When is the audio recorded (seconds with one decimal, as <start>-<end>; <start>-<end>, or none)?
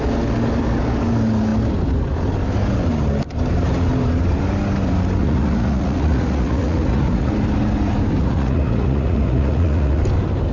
0.0-5.2; 7.3-8.2; 10.0-10.5